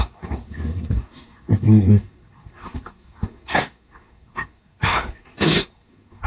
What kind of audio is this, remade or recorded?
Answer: remade